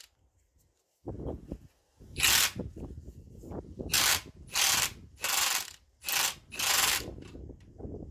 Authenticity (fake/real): real